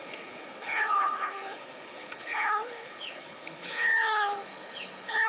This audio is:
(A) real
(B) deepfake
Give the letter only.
B